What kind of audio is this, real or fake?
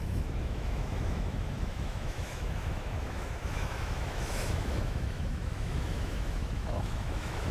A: fake